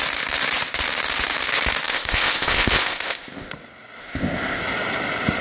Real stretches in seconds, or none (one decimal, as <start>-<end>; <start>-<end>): 0.0-1.9; 3.5-4.0; 4.6-5.4

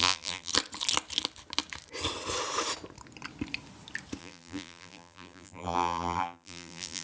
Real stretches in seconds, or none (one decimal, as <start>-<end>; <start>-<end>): 0.5-4.2